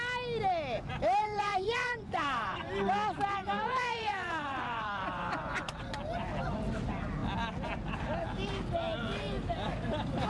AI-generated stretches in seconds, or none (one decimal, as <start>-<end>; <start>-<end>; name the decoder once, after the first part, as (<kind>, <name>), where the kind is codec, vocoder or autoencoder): 1.2-2.7 (vocoder, Vocos); 3.4-5.8